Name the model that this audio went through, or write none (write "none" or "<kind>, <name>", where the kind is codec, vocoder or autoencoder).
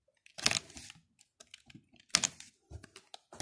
none